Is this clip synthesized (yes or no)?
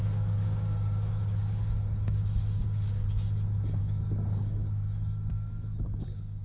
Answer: yes